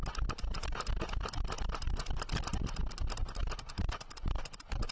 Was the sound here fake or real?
real